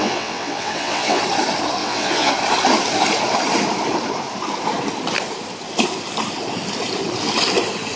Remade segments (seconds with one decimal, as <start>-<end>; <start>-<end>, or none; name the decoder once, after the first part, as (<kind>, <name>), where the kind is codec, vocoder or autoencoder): 0.0-1.2 (vocoder, WaveNeXt); 1.8-2.3